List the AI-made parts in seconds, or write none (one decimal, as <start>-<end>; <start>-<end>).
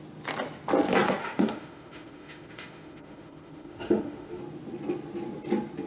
1.2-4.4